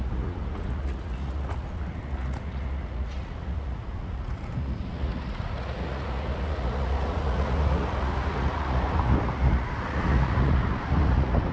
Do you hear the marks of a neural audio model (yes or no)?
yes